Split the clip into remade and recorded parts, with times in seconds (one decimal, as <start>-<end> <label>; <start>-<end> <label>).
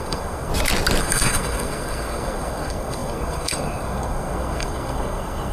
0.0-0.5 remade; 0.5-1.0 recorded; 1.0-5.5 remade